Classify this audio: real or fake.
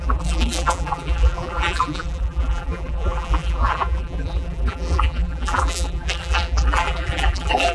fake